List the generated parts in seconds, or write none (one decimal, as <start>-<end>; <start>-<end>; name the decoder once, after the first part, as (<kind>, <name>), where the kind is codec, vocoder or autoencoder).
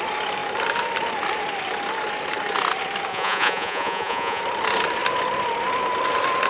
3.1-4.4 (vocoder, Vocos)